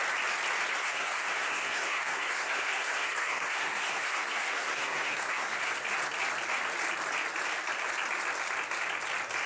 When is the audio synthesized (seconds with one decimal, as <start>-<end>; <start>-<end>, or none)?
0.7-5.7